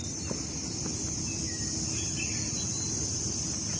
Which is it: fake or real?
real